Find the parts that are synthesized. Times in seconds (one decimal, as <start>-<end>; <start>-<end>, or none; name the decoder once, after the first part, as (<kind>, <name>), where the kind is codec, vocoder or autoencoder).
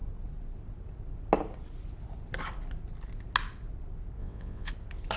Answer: 4.2-4.7 (vocoder, WaveNeXt)